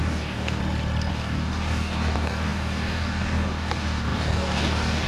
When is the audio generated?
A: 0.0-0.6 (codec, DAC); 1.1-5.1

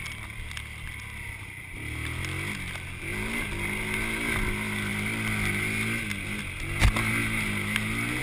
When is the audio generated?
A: none

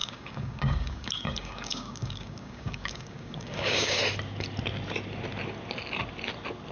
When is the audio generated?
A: 0.0-4.0 (codec, DAC)

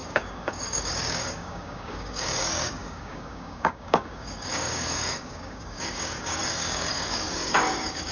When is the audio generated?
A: 0.0-8.1 (codec, DAC)

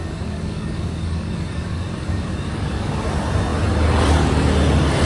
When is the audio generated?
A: 0.0-3.1 (codec, DAC)

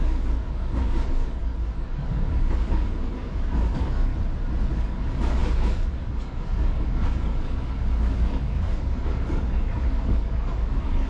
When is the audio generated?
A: 0.0-4.1 (codec, DAC); 4.7-11.1

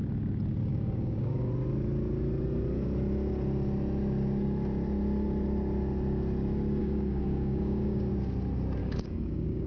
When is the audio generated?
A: 0.7-1.5 (codec, DAC); 6.8-8.1; 8.8-9.7